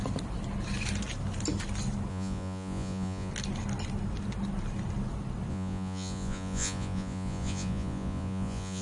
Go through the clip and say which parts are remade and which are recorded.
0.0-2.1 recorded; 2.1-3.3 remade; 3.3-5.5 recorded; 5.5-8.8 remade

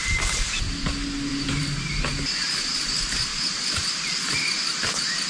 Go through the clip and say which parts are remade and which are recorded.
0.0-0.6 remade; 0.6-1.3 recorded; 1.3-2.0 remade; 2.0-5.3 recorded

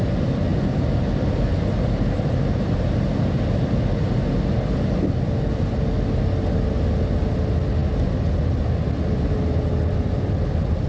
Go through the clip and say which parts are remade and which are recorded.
0.0-10.9 recorded

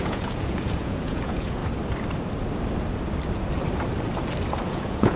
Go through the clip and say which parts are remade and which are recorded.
0.0-1.6 remade; 1.6-4.7 recorded; 4.7-5.2 remade

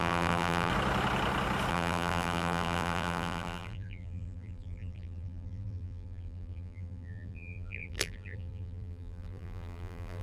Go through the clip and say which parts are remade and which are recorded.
0.0-0.7 remade; 0.7-1.7 recorded; 1.7-10.2 remade